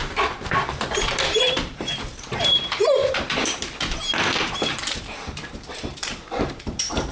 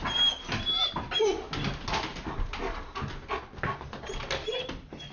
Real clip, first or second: second